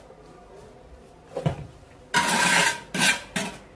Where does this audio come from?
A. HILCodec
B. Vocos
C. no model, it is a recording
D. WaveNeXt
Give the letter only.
C